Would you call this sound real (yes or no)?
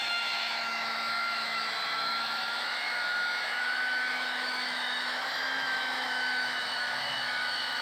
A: no